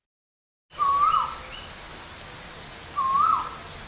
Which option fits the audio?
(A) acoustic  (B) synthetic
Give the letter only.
A